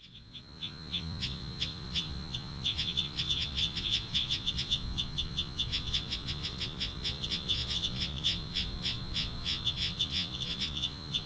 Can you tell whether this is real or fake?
fake